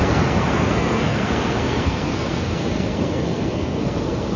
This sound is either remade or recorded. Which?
remade